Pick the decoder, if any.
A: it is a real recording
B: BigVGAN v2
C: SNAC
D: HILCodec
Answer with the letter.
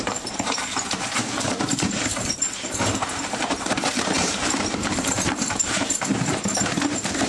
B